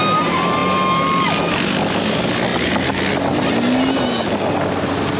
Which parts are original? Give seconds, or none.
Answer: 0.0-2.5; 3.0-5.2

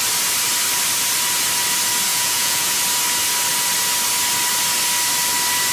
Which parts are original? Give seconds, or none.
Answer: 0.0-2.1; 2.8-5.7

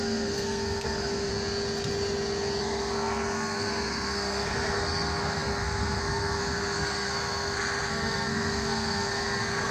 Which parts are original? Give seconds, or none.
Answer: 1.3-2.6

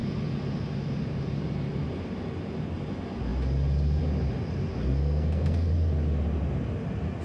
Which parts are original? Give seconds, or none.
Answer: 0.0-4.8; 5.7-7.2

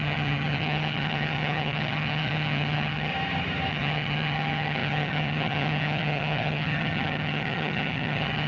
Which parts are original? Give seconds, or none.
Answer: 3.1-3.7

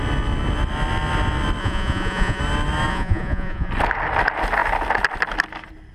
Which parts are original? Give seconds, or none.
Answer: 0.0-1.6; 2.4-2.9; 3.7-5.9

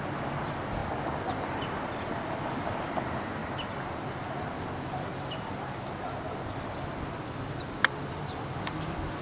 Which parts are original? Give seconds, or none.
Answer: 0.0-9.2

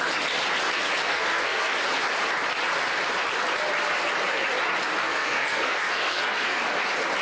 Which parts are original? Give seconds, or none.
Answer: 0.0-1.1; 1.7-5.0; 6.6-7.2